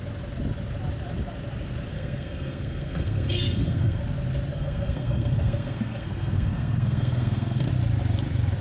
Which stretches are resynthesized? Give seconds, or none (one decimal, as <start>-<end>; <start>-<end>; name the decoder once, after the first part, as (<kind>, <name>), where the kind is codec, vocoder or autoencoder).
1.9-4.0 (codec, SNAC); 4.5-7.7